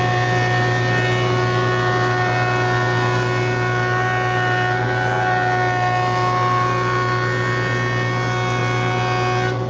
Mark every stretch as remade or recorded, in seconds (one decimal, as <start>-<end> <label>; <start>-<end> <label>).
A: 0.0-9.7 recorded